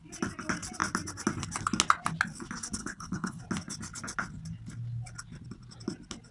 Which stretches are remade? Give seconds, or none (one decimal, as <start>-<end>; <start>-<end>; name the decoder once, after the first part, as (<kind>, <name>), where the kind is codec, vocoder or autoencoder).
2.8-3.4 (codec, HILCodec)